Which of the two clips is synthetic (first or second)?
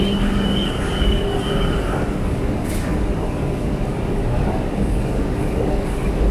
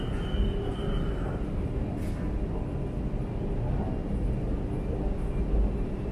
first